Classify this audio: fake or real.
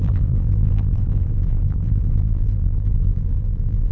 fake